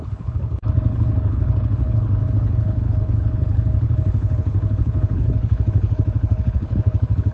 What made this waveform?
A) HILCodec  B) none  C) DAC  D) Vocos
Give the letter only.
A